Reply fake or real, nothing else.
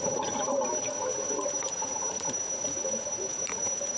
fake